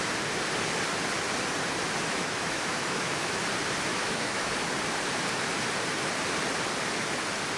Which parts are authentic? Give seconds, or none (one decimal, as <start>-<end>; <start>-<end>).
0.0-2.1; 3.4-3.9; 4.5-7.6